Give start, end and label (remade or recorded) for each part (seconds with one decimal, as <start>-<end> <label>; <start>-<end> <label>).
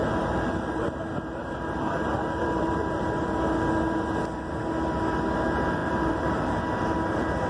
0.0-3.3 remade; 3.3-5.8 recorded; 5.8-6.6 remade; 6.6-7.5 recorded